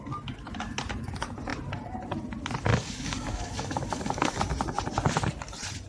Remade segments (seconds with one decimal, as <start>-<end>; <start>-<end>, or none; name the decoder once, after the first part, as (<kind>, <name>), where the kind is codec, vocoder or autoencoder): 2.7-4.4 (codec, DAC)